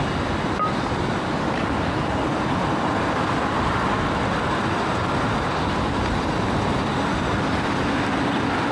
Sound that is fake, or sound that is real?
real